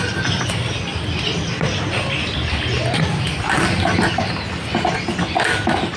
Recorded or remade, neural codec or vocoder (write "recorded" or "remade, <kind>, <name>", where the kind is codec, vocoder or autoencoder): recorded